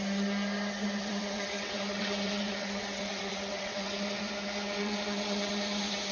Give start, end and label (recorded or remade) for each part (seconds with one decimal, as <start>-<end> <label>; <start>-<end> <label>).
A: 0.0-1.0 recorded; 1.0-4.2 remade; 4.2-4.8 recorded; 4.8-5.5 remade; 5.5-6.1 recorded

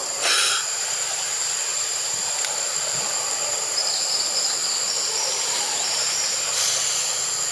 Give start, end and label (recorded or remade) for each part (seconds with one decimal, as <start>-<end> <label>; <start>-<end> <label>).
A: 0.0-1.7 recorded; 1.7-2.8 remade; 2.8-7.5 recorded

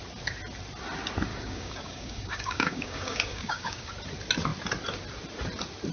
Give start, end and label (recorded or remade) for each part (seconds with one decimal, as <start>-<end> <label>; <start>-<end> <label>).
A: 0.0-1.3 recorded; 1.3-3.9 remade; 3.9-5.9 recorded

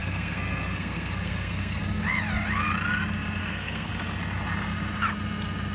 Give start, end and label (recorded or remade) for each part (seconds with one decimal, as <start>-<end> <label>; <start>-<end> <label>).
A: 0.0-1.8 remade; 1.8-3.4 recorded; 3.4-3.9 remade; 3.9-5.7 recorded

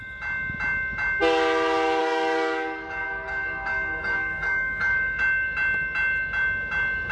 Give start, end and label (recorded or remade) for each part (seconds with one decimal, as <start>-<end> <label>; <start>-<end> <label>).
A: 0.0-2.0 recorded; 2.0-5.2 remade; 5.2-7.1 recorded